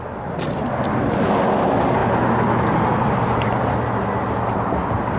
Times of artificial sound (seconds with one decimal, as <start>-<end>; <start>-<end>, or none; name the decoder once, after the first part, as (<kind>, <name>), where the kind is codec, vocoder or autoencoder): none